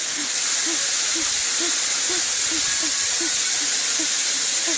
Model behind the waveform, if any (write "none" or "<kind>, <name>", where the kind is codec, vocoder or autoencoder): none